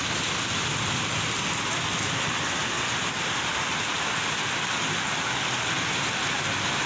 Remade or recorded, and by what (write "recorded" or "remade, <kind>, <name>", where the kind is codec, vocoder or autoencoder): recorded